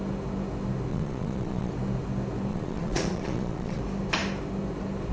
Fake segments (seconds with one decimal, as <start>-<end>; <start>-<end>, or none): 0.9-1.7; 2.5-3.8